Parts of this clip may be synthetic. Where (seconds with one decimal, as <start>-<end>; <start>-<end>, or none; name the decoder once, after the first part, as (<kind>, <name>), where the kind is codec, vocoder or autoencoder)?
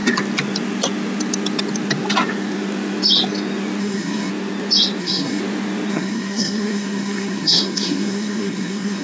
3.8-4.3 (codec, SNAC); 5.0-5.4; 5.9-9.0